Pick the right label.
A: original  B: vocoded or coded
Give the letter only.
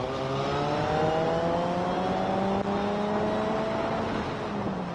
A